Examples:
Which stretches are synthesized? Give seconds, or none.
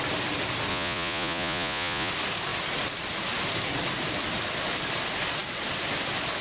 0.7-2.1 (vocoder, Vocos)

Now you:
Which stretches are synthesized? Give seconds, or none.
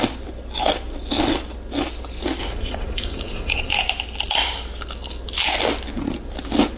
2.4-3.8 (vocoder, Vocos)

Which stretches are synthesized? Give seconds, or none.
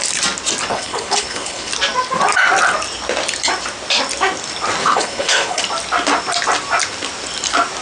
0.7-1.7 (codec, HILCodec); 4.8-5.6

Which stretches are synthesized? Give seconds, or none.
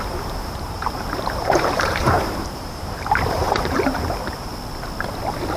0.0-4.5 (vocoder, BigVGAN v2)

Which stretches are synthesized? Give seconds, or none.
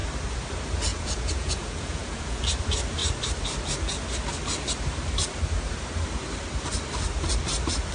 0.9-2.4 (vocoder, Vocos)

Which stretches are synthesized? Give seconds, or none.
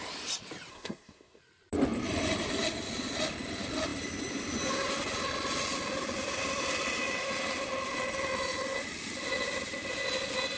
0.7-1.4 (codec, SNAC)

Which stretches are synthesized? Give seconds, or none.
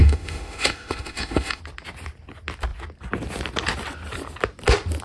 0.0-1.6 (autoencoder, DAC-VAE)